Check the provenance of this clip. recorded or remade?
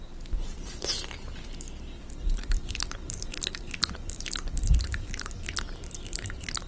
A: remade